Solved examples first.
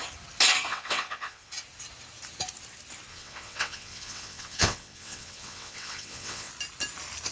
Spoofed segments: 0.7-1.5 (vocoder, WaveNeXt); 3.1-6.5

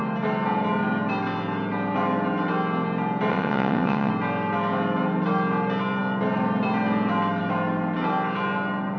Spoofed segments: 3.3-4.1 (vocoder, WaveNeXt)

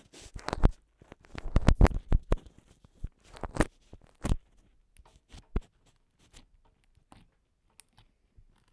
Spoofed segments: none

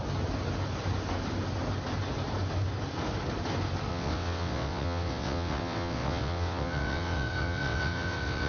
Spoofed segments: 3.9-8.5 (vocoder, WaveNeXt)

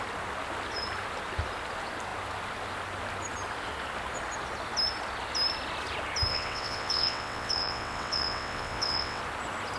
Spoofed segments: 6.3-9.2 (vocoder, WaveNeXt)

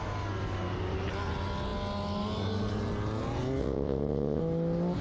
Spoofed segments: 3.6-4.4 (vocoder, WaveNeXt)

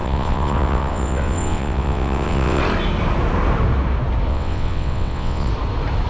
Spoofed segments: 0.0-2.6 (vocoder, WaveNeXt); 4.3-5.5

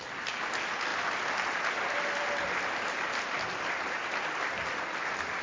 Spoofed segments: none